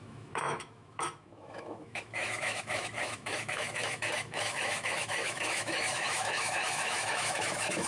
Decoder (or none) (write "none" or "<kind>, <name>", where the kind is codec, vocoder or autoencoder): autoencoder, DAC-VAE